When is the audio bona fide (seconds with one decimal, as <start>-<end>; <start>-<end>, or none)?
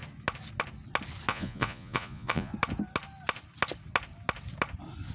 0.0-1.3; 2.5-5.1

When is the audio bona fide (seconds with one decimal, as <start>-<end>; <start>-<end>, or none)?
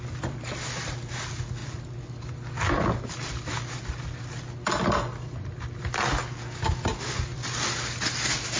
0.0-8.6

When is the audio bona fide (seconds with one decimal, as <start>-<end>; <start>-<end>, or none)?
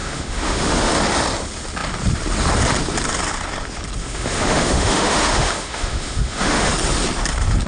0.9-4.0; 6.7-7.7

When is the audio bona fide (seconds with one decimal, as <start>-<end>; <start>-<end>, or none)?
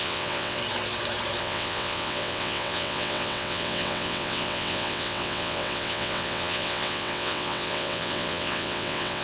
0.6-1.4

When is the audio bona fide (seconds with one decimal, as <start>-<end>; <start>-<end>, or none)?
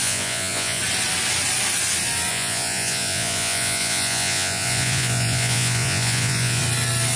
0.8-2.3; 6.6-7.2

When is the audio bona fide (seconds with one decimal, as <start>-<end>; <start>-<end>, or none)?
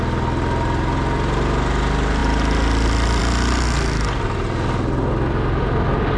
0.0-6.2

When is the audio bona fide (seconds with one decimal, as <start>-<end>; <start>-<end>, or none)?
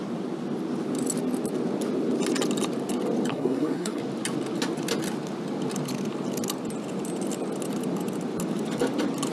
0.0-3.3; 4.0-9.3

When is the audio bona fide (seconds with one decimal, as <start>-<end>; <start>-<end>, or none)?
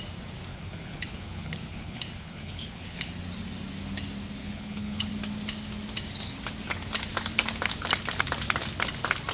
0.0-0.5; 3.1-4.4; 5.1-9.3